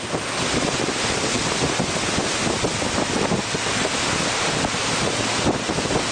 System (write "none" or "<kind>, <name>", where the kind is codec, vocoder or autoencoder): none